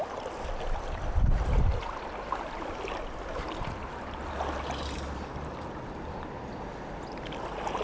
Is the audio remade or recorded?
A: recorded